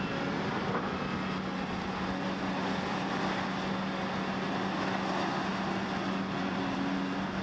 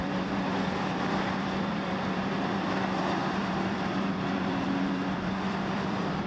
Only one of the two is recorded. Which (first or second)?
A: first